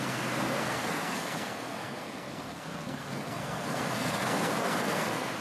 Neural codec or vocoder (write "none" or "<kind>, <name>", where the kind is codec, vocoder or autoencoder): codec, SNAC